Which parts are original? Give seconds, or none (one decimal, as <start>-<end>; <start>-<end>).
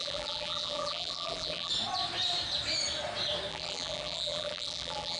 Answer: 1.7-3.5